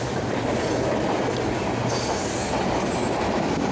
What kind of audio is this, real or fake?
real